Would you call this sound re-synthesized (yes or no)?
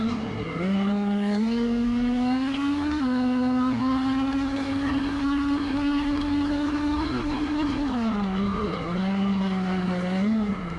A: yes